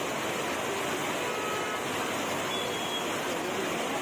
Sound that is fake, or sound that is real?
real